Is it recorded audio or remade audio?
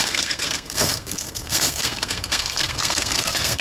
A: remade